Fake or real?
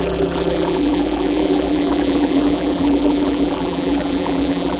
fake